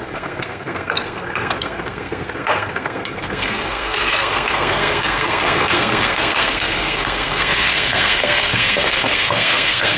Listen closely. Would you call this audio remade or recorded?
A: remade